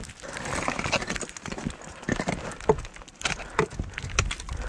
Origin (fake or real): real